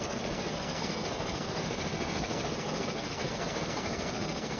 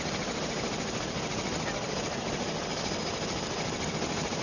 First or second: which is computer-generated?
first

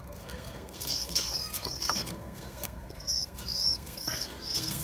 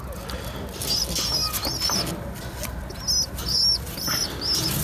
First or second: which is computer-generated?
first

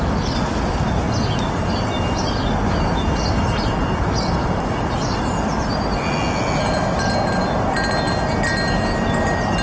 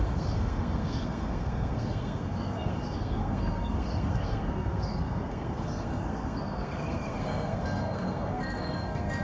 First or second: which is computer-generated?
second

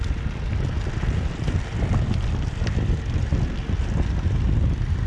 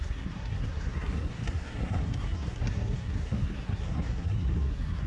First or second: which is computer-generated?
second